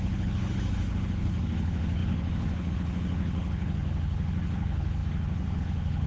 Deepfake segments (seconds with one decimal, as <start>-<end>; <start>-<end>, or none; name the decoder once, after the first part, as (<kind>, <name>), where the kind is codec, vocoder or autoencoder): 0.0-6.1 (codec, HILCodec)